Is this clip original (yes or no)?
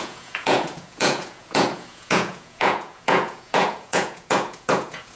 no